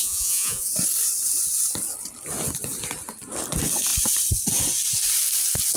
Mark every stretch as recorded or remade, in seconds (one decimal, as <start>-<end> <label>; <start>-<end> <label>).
0.0-0.7 remade; 0.7-5.8 recorded